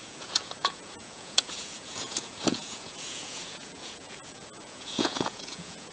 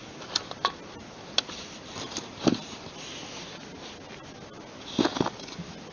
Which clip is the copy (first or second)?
first